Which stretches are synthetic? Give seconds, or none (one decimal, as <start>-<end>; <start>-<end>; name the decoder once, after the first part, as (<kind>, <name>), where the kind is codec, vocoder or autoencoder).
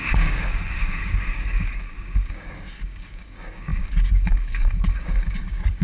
0.0-5.8 (codec, DAC)